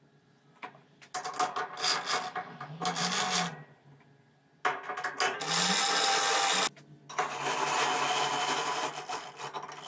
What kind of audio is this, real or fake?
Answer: real